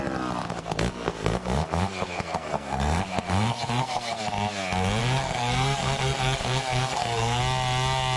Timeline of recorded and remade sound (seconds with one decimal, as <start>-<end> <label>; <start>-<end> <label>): 0.0-0.4 recorded; 0.4-4.2 remade; 4.2-5.0 recorded; 5.0-7.4 remade; 7.4-8.2 recorded